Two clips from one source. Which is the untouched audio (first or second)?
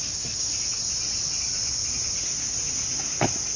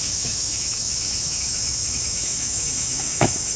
first